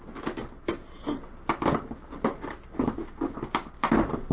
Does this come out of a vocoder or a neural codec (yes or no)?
no